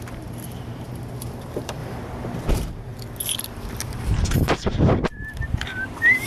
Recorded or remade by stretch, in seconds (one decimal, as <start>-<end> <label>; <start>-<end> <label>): 0.0-1.8 remade; 1.8-2.5 recorded; 2.5-2.9 remade; 2.9-3.9 recorded; 3.9-6.3 remade